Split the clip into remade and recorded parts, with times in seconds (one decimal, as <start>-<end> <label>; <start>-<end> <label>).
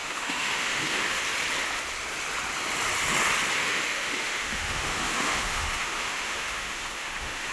0.0-1.2 remade; 1.2-3.6 recorded; 3.6-7.5 remade